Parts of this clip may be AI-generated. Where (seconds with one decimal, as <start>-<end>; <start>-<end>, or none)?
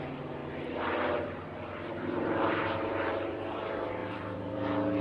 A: 0.0-0.4; 1.9-5.0